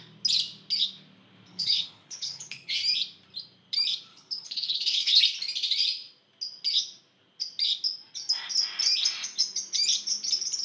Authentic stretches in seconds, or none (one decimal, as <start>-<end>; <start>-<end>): 0.0-1.5; 2.7-4.1; 5.2-10.6